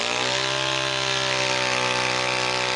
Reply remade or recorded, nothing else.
recorded